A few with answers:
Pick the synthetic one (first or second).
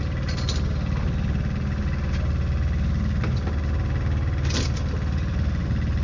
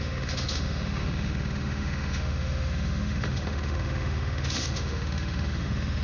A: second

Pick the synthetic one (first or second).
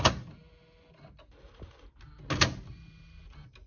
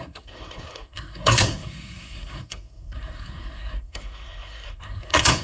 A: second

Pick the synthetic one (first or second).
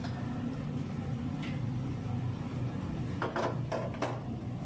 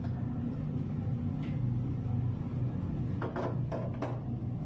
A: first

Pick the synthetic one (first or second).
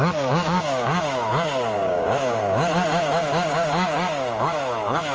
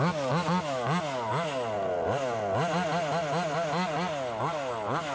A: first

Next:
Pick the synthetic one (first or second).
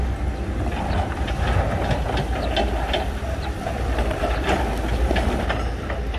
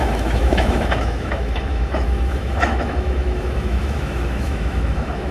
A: second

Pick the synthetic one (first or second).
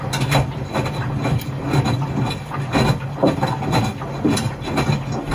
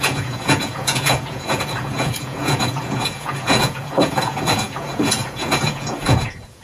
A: second